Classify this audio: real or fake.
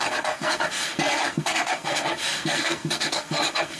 fake